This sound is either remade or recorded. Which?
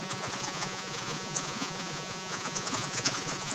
remade